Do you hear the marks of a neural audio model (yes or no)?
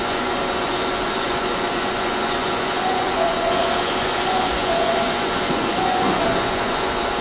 yes